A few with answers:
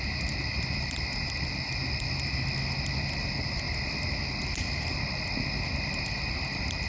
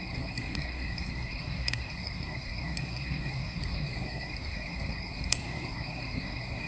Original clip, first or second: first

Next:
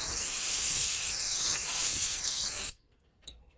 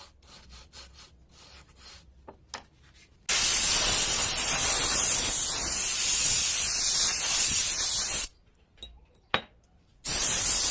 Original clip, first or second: second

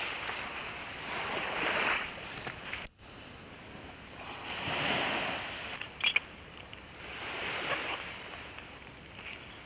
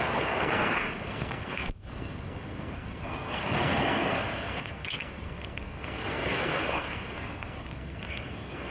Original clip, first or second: first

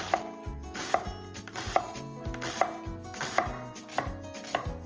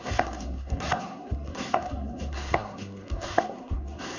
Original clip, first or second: first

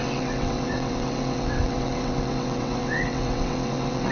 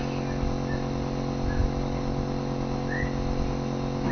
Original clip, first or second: second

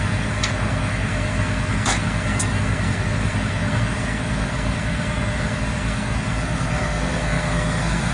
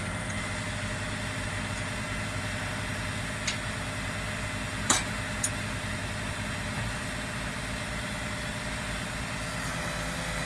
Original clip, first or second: second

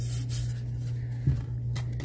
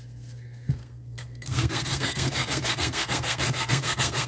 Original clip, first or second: first